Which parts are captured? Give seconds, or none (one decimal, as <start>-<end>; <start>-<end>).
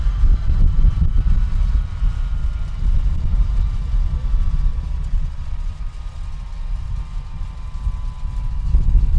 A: 0.0-4.7; 5.7-9.2